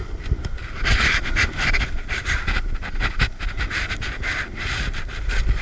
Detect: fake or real real